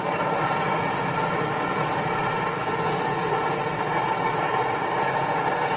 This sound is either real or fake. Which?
real